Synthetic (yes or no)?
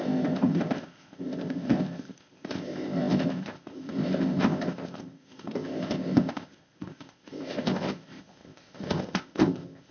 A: yes